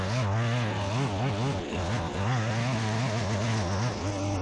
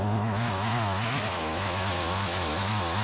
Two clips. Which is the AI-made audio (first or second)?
second